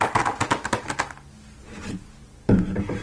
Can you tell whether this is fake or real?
real